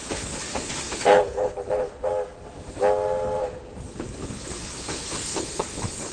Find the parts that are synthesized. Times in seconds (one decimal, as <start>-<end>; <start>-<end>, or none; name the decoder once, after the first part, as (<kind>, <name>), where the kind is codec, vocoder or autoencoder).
0.0-2.1 (codec, HILCodec); 3.4-6.1